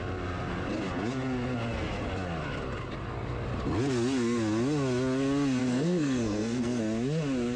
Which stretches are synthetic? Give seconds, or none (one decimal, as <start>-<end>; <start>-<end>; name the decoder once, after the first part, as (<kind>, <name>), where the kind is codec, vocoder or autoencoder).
5.6-6.8 (codec, SNAC)